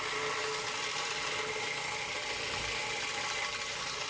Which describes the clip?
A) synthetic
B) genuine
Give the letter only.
B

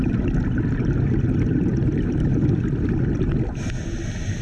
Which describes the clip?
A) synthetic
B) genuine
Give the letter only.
B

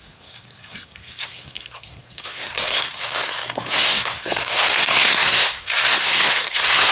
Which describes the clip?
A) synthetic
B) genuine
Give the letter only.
A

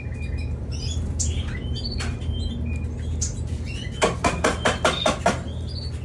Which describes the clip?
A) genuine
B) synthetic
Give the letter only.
A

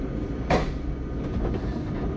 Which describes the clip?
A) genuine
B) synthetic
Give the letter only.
A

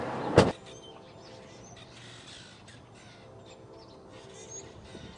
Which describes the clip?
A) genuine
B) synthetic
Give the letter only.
A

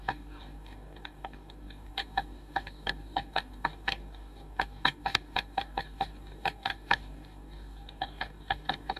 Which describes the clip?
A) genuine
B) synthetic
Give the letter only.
B